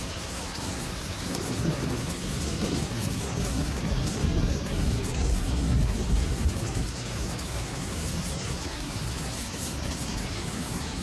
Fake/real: fake